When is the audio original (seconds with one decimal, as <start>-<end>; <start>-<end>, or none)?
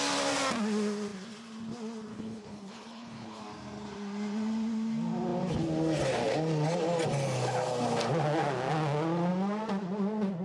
0.0-2.1; 3.4-10.4